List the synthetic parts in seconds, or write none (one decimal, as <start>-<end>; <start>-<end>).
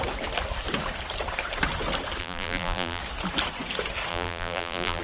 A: 2.2-3.0; 4.1-5.0